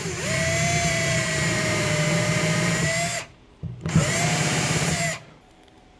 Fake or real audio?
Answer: fake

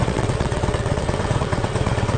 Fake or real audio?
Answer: fake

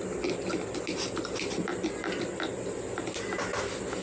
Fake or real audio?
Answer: real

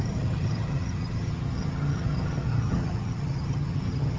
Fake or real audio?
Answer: fake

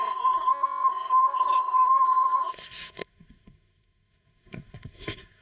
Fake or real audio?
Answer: fake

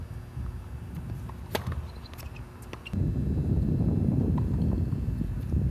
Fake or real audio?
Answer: real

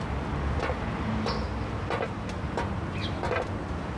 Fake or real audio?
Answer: real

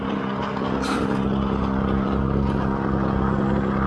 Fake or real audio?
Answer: real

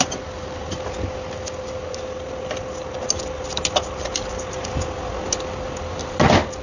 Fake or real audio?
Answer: real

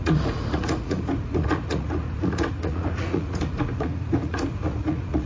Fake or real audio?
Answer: fake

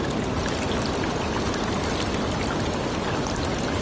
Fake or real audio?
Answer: real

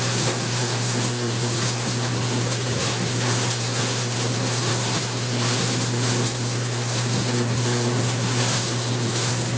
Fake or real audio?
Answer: fake